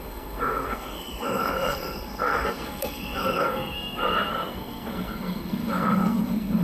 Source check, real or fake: fake